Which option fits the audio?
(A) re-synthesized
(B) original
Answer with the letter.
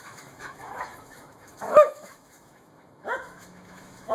A